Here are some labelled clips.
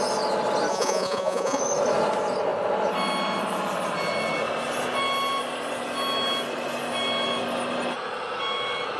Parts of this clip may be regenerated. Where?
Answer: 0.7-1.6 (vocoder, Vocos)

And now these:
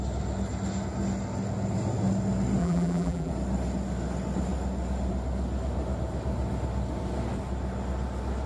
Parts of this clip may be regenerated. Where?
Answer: 2.6-3.3 (vocoder, BigVGAN v2)

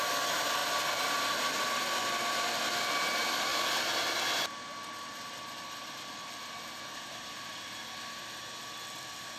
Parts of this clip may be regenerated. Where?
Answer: none